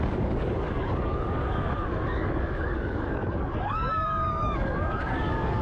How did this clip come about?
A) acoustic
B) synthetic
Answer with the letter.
B